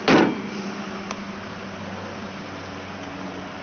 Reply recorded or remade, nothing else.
recorded